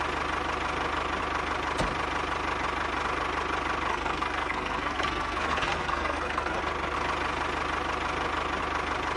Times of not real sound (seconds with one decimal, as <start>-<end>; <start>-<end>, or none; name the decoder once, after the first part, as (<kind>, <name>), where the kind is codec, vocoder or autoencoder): 3.9-6.6 (codec, SNAC)

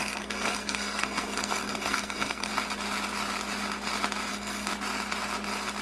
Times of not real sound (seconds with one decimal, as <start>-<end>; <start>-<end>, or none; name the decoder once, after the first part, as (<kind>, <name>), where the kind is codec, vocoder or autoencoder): 0.0-2.5 (codec, SNAC); 4.3-4.7

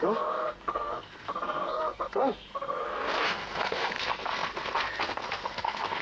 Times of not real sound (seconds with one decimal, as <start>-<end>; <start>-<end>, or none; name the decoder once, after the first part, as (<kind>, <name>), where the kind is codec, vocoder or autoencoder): 0.0-6.0 (codec, SNAC)

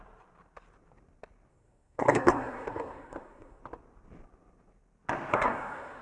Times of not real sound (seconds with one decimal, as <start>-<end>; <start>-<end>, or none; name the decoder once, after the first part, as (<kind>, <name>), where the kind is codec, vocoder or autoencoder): 1.5-3.6 (codec, SNAC); 5.3-6.0

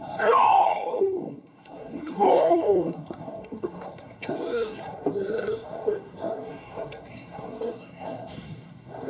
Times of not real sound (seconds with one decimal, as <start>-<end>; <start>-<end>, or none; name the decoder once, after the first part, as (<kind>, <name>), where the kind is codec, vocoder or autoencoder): 0.0-9.1 (codec, SNAC)

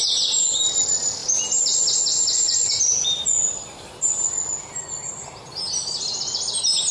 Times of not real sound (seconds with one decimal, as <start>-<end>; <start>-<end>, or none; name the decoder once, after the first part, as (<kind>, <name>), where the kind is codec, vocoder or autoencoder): none